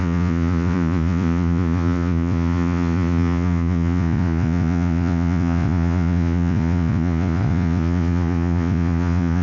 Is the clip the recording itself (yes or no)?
no